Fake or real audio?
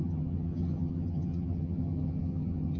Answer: fake